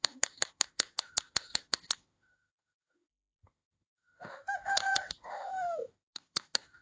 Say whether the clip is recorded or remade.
remade